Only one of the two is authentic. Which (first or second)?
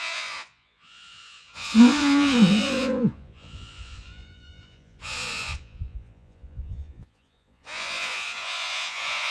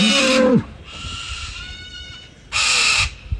second